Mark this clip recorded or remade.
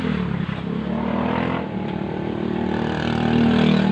recorded